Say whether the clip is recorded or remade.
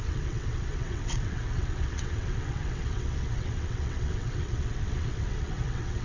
remade